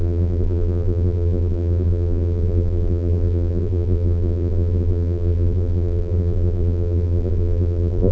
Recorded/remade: remade